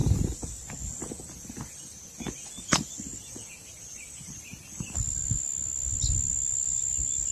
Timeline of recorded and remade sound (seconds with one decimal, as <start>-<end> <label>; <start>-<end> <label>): 0.0-5.5 remade; 5.5-6.3 recorded; 6.3-7.3 remade